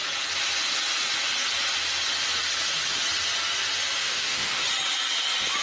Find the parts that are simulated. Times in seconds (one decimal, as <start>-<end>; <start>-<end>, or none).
4.0-4.6